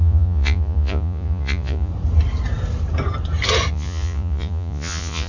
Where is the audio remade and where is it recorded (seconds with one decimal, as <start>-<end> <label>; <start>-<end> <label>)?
0.0-1.9 remade; 1.9-3.7 recorded; 3.7-5.3 remade